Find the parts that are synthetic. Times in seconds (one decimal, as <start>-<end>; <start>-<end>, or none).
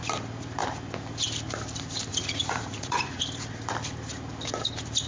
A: 2.1-3.2